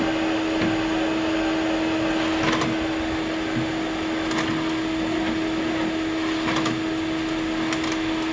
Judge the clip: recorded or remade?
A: recorded